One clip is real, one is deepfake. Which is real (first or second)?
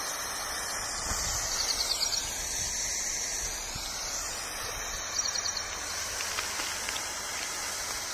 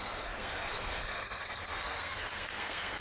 first